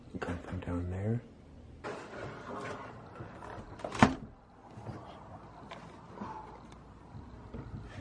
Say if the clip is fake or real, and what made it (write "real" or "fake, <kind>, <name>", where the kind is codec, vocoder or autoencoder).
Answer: real